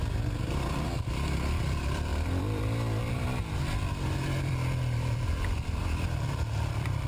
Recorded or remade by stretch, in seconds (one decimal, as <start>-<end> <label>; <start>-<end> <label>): 0.0-7.1 remade